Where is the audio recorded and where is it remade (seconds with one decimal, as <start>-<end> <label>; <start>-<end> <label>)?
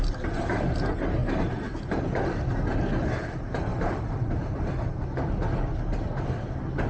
0.0-6.9 recorded